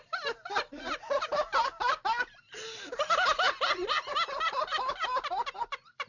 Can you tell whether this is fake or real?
real